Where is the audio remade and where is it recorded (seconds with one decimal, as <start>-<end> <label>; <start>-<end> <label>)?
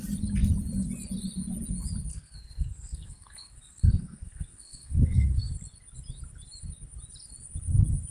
0.0-2.1 recorded; 2.1-5.5 remade; 5.5-8.1 recorded